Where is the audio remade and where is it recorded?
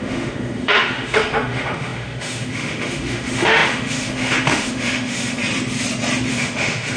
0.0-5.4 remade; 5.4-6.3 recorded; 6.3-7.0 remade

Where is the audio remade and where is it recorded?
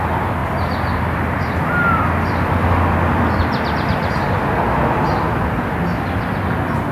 0.0-6.9 recorded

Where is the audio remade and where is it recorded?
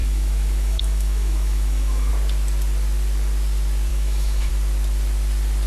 0.0-2.1 remade; 2.1-3.9 recorded; 3.9-4.5 remade; 4.5-5.7 recorded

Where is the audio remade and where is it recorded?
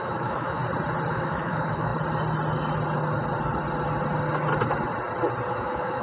0.0-0.6 remade; 0.6-1.1 recorded; 1.1-1.9 remade; 1.9-5.5 recorded; 5.5-6.0 remade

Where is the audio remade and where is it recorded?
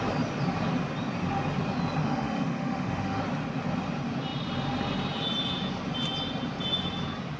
0.0-2.0 recorded; 2.0-3.2 remade; 3.2-7.4 recorded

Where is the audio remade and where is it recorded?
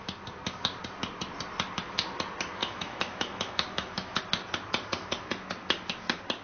0.0-2.6 recorded; 2.6-4.2 remade; 4.2-6.4 recorded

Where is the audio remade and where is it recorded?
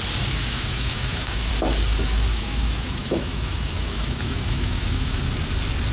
0.0-0.4 recorded; 0.4-1.5 remade; 1.5-2.3 recorded; 2.3-5.2 remade; 5.2-5.9 recorded